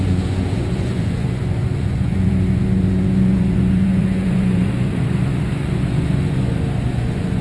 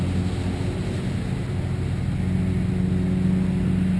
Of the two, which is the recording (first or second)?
second